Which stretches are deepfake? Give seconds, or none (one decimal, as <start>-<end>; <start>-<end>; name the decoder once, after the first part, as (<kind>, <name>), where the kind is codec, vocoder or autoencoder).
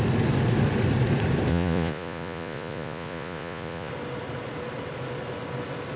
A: 1.5-3.9 (vocoder, Vocos)